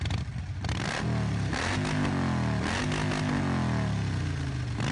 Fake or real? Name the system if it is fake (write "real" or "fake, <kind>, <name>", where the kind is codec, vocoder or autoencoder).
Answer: real